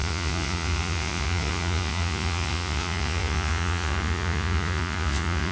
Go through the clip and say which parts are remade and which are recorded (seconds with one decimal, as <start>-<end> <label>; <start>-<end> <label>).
0.0-5.5 remade